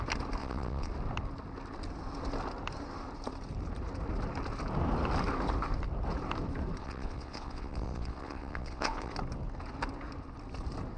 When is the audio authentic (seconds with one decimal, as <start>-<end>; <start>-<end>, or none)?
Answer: 0.0-0.4; 0.9-6.8; 9.1-11.0